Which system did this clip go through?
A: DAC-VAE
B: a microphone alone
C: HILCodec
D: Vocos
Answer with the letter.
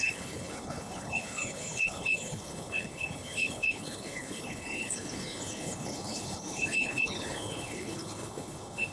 C